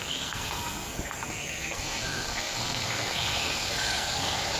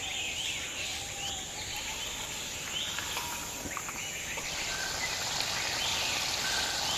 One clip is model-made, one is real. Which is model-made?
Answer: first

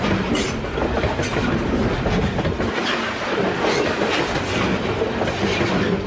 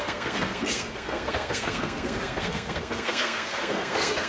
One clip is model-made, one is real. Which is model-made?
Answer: second